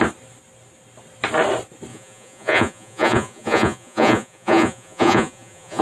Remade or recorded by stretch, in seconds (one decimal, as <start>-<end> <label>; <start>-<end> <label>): 0.0-1.9 recorded; 1.9-5.8 remade